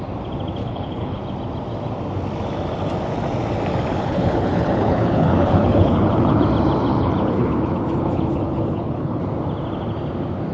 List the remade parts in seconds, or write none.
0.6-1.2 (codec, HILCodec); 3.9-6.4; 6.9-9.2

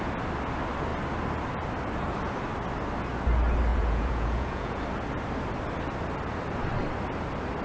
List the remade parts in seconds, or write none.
3.7-4.8 (vocoder, Vocos)

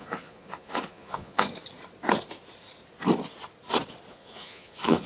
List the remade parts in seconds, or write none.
0.0-1.5 (vocoder, Vocos); 4.1-5.1

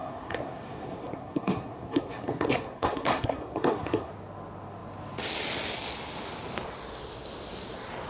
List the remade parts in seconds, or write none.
0.0-4.1 (codec, SNAC)